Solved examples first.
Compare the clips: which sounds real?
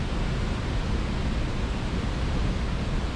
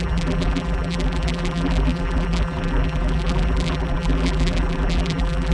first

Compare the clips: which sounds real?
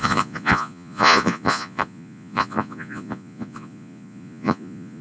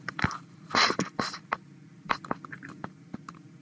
second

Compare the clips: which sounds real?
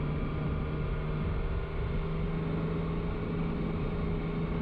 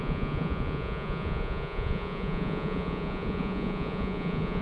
first